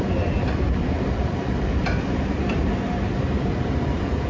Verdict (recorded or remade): remade